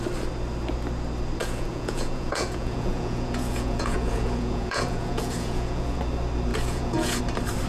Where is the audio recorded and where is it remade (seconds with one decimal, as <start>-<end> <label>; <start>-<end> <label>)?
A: 0.0-1.4 recorded; 1.4-6.0 remade; 6.0-6.5 recorded; 6.5-7.2 remade; 7.2-7.7 recorded